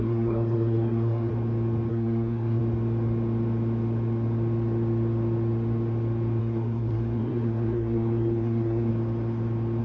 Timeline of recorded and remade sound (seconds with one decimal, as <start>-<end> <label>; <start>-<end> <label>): 0.0-1.3 remade; 1.3-1.9 recorded; 1.9-2.6 remade; 2.6-6.4 recorded; 6.4-8.9 remade; 8.9-9.8 recorded